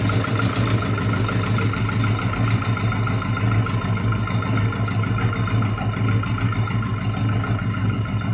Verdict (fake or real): real